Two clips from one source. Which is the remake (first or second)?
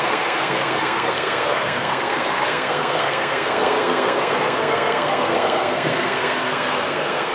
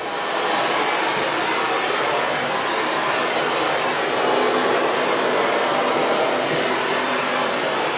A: first